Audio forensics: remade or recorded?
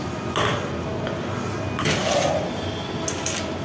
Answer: recorded